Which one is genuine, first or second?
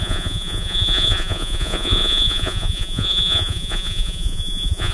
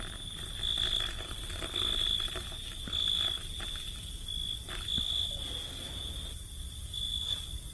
second